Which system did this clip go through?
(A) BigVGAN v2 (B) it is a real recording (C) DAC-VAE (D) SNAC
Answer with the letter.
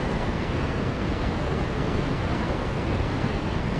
D